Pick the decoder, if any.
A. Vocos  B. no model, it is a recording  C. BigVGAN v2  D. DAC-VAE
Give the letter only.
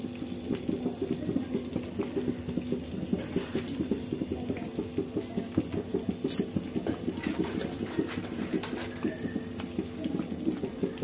B